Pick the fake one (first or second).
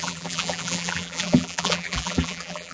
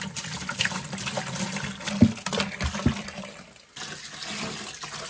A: first